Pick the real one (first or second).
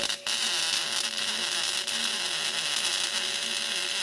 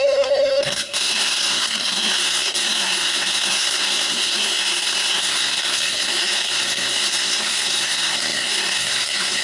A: first